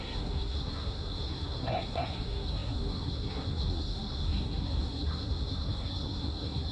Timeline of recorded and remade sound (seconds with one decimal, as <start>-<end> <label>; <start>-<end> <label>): 0.0-6.7 remade